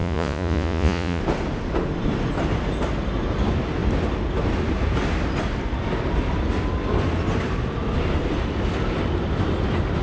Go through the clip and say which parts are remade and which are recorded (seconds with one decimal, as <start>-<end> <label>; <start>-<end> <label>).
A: 0.0-1.2 remade; 1.2-10.0 recorded